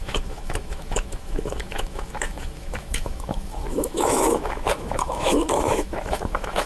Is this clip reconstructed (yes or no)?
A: yes